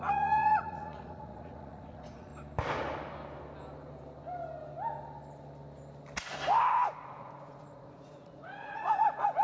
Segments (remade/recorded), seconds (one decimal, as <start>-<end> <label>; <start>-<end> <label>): 0.0-2.3 remade; 2.3-6.7 recorded; 6.7-9.4 remade

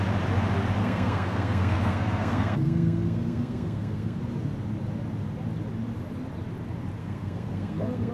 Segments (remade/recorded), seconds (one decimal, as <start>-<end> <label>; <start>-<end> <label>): 0.0-0.8 recorded; 0.8-4.2 remade; 4.2-7.0 recorded; 7.0-8.1 remade

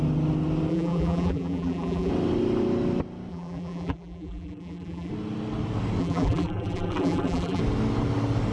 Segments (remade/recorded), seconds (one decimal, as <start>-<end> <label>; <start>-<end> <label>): 0.0-0.7 recorded; 0.7-2.1 remade; 2.1-3.3 recorded; 3.3-5.1 remade; 5.1-6.0 recorded; 6.0-7.6 remade; 7.6-8.5 recorded